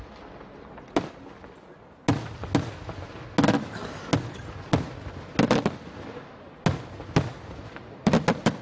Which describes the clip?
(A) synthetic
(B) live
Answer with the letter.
B